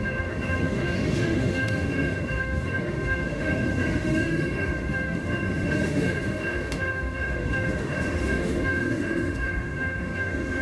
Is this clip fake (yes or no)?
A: yes